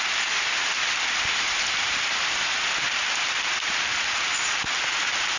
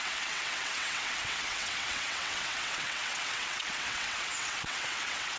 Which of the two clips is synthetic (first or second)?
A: second